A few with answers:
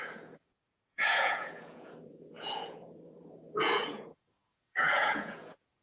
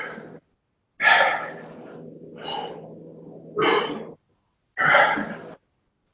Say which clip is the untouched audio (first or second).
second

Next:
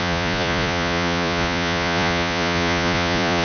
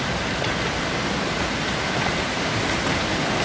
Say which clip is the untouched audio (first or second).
second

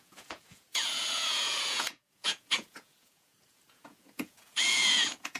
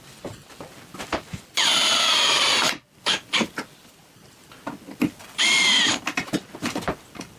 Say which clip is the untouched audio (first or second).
second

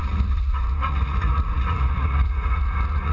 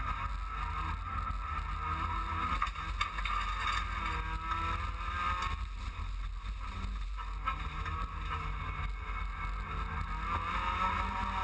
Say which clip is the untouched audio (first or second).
second